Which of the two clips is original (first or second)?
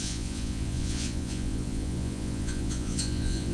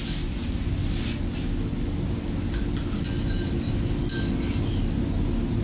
second